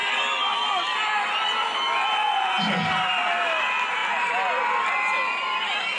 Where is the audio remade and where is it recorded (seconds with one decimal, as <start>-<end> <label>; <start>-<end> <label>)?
0.0-6.0 recorded